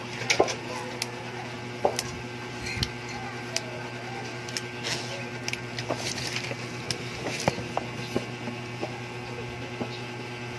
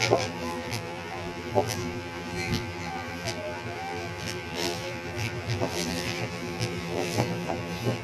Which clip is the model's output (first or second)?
second